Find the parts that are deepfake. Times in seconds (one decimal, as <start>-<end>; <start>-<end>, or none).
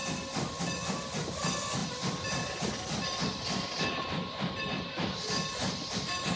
1.8-4.9